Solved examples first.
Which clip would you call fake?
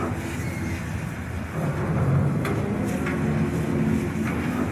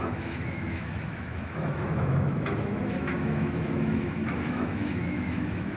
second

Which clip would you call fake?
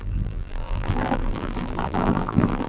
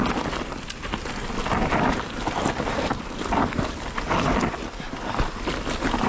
first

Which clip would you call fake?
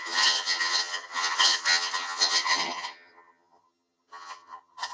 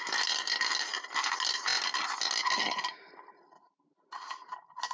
first